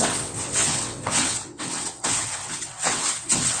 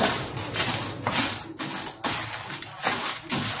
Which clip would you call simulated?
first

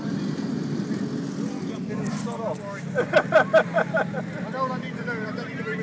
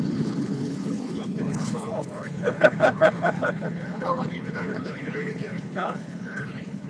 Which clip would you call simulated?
second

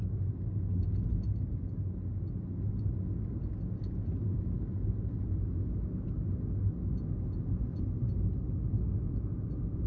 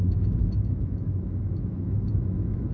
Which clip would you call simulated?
second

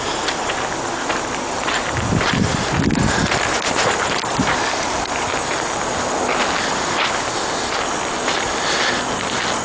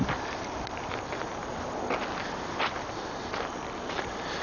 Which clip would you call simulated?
second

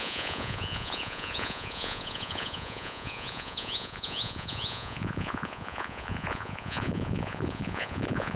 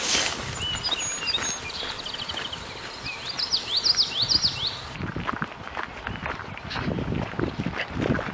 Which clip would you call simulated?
first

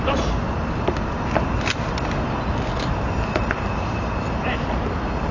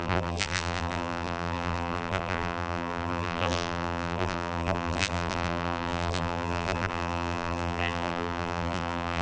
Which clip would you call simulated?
second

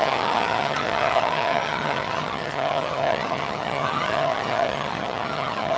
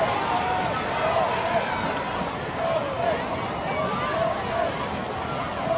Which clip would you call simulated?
first